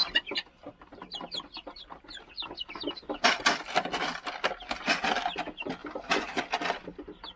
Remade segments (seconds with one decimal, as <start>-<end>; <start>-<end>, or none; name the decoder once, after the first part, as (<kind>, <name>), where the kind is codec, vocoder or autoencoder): 0.0-4.4 (vocoder, BigVGAN v2)